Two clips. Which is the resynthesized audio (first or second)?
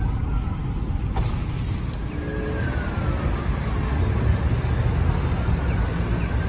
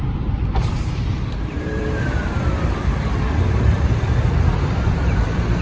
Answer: second